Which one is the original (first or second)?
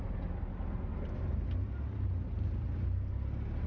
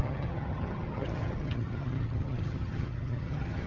first